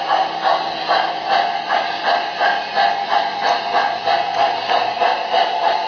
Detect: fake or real real